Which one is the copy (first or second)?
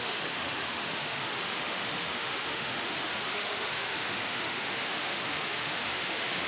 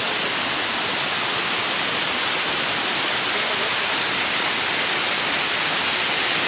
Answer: first